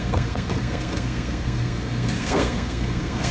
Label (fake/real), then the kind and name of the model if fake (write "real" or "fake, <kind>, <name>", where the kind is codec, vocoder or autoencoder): fake, codec, SNAC